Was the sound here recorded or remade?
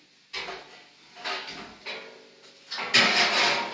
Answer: recorded